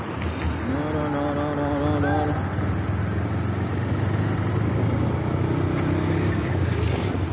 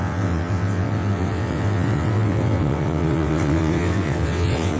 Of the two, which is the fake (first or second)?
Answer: second